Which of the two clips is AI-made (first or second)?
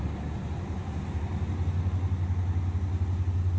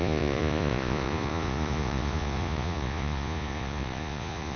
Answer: second